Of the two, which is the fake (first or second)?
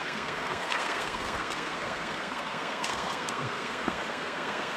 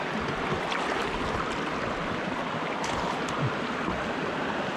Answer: first